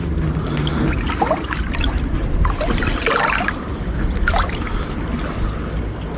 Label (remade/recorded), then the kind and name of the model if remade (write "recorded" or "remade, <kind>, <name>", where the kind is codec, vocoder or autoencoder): recorded